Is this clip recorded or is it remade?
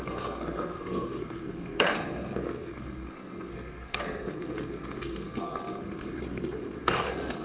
remade